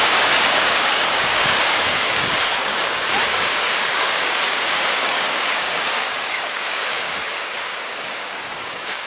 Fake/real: fake